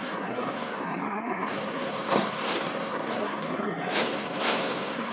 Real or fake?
fake